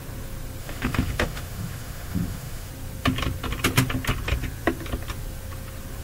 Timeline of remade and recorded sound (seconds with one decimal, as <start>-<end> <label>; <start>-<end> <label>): 0.0-0.6 recorded; 0.6-2.7 remade; 2.7-6.0 recorded